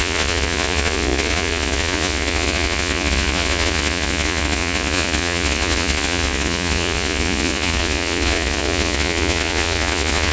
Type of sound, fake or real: fake